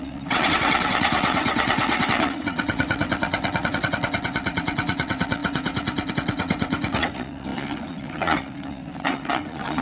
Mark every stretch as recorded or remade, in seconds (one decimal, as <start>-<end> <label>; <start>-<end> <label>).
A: 0.0-9.8 remade